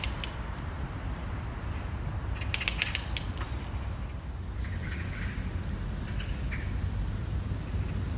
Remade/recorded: recorded